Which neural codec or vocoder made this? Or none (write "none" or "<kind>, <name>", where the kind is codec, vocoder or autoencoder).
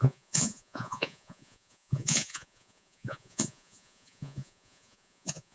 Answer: vocoder, Vocos